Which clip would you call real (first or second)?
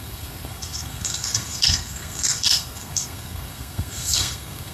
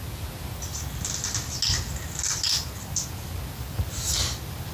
second